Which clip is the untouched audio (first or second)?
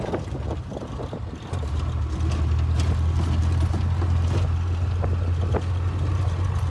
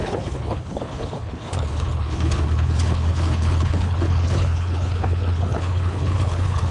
first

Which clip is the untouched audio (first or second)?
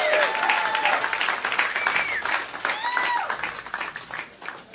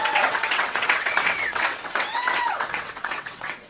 first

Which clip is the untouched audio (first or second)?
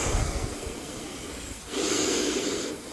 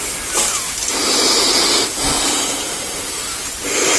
second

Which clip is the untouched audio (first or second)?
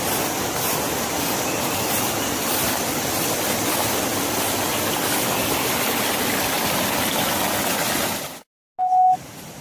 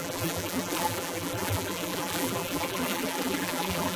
first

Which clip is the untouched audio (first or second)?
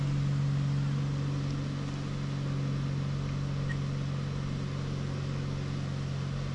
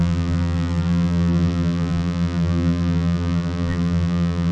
first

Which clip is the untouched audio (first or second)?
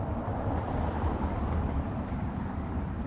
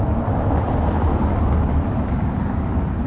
second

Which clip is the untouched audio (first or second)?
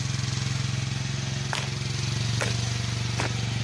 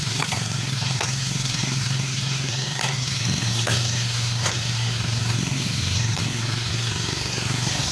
first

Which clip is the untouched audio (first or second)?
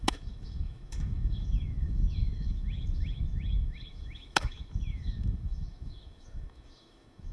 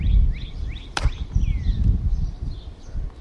second